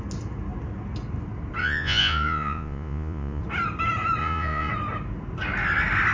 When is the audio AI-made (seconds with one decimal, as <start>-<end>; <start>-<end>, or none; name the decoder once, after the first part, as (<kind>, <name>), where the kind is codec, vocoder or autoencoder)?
1.6-3.4 (vocoder, Vocos); 4.2-4.7